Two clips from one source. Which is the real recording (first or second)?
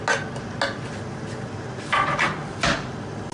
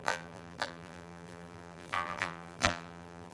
first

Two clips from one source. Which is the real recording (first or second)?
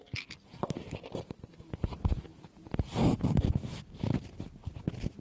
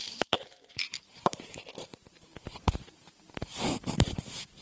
first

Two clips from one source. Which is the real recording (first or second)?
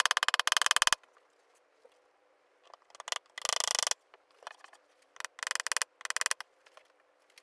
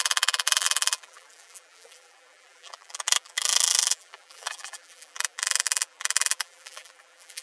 first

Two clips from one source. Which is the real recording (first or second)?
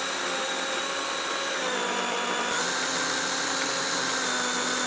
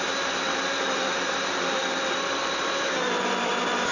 first